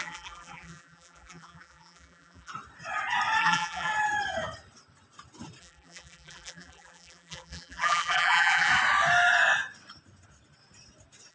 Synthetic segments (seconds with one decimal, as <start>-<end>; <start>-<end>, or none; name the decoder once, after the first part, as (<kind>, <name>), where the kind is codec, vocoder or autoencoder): 0.0-2.5 (vocoder, BigVGAN v2); 3.4-3.9; 5.6-8.7